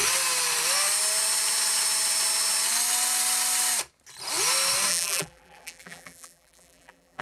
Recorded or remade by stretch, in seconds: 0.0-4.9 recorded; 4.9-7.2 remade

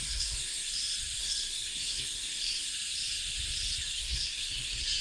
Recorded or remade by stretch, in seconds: 0.0-0.7 remade; 0.7-1.2 recorded; 1.2-2.7 remade; 2.7-3.8 recorded; 3.8-5.0 remade

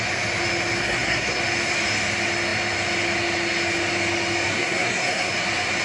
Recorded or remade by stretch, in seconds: 0.0-0.8 recorded; 0.8-1.4 remade; 1.4-4.5 recorded; 4.5-5.3 remade; 5.3-5.8 recorded

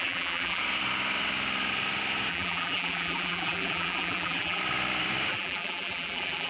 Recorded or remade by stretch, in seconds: 0.0-0.6 remade; 0.6-2.3 recorded; 2.3-4.6 remade; 4.6-5.3 recorded; 5.3-6.5 remade

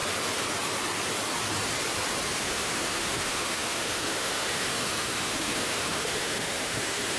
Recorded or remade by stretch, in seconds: 0.0-2.4 recorded; 2.4-7.2 remade

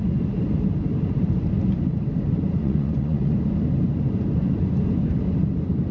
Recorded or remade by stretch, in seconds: 0.0-2.6 recorded; 2.6-3.3 remade; 3.3-5.9 recorded